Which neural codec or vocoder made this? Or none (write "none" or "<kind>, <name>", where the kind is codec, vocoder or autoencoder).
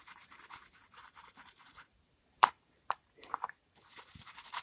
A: vocoder, BigVGAN v2